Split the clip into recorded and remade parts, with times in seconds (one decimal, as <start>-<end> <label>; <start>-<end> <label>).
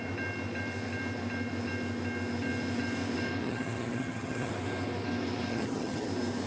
0.0-3.4 recorded; 3.4-4.5 remade; 4.5-5.5 recorded; 5.5-6.1 remade; 6.1-6.5 recorded